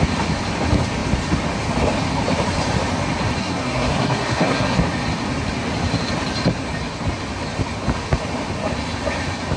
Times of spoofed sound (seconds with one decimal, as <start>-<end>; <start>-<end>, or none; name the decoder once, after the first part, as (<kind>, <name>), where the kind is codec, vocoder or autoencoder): 3.4-4.8 (codec, SNAC)

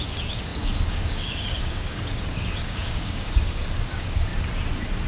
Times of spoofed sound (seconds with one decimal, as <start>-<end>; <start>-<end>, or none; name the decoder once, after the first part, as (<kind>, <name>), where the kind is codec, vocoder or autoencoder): 0.0-4.3 (codec, DAC)

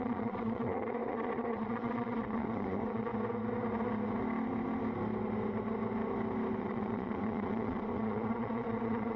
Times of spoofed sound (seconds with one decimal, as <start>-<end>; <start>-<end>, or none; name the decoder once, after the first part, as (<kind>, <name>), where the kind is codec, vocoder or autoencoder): 0.0-3.1 (vocoder, Vocos); 6.6-9.2

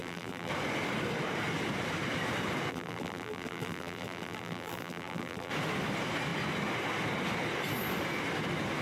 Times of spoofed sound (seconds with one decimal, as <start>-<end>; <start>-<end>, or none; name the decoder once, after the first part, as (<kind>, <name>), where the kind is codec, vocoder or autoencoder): 0.0-0.5 (vocoder, BigVGAN v2); 2.7-5.5

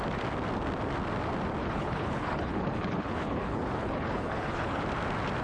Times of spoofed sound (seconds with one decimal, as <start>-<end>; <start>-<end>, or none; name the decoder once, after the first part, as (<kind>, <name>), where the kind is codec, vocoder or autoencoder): 1.6-4.8 (codec, HILCodec)

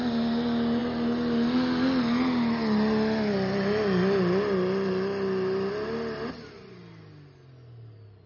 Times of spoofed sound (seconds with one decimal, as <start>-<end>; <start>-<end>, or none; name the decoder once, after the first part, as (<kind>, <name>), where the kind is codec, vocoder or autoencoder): none

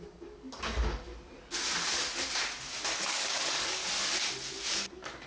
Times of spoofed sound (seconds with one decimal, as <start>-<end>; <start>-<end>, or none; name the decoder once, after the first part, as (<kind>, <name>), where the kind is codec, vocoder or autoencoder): 0.0-1.1 (codec, DAC); 2.9-3.8; 4.7-5.3